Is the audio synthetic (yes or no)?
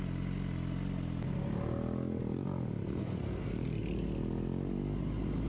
no